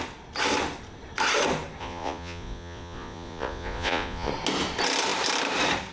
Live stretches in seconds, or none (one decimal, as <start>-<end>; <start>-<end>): 0.0-1.8; 4.3-5.9